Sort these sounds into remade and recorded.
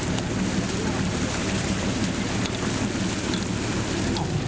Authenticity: recorded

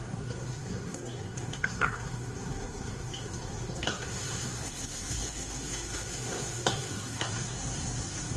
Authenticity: remade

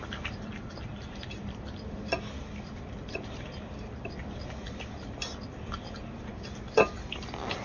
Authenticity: recorded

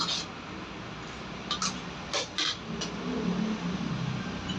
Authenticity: recorded